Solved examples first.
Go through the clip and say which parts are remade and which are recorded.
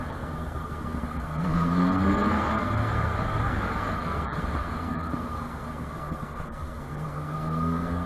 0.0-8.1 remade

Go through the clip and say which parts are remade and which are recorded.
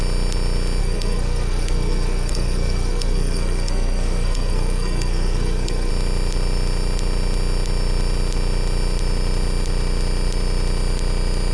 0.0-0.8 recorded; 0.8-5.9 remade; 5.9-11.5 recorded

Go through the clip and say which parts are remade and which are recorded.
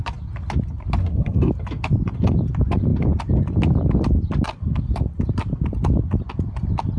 0.0-1.0 recorded; 1.0-1.5 remade; 1.5-7.0 recorded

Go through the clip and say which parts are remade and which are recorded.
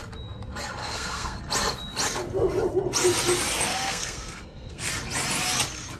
0.0-0.8 recorded; 0.8-1.4 remade; 1.4-3.7 recorded; 3.7-4.9 remade; 4.9-6.0 recorded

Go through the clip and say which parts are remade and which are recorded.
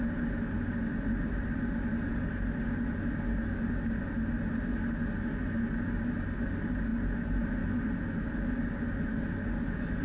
0.0-10.0 recorded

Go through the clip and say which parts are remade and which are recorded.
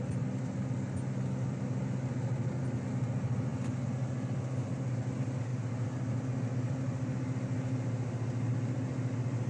0.0-9.5 recorded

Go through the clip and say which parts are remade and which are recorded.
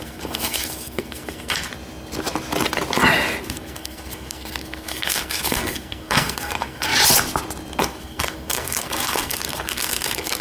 0.0-1.7 remade; 1.7-3.4 recorded; 3.4-6.9 remade; 6.9-7.8 recorded; 7.8-10.4 remade